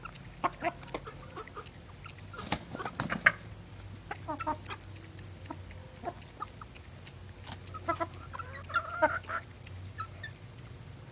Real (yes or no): yes